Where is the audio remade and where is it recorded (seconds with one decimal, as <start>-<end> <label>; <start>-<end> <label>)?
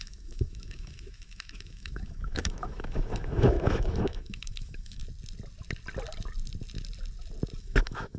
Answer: 0.0-5.0 remade; 5.0-7.6 recorded; 7.6-8.2 remade